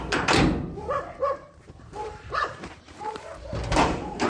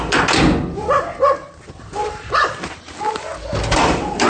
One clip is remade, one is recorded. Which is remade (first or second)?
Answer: first